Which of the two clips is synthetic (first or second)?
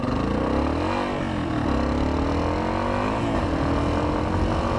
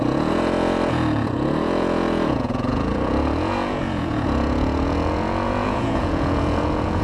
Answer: second